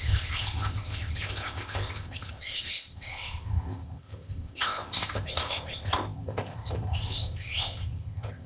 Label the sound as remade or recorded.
remade